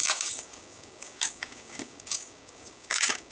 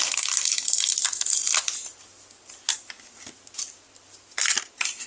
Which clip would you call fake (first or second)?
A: first